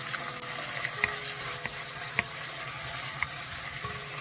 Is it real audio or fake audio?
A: real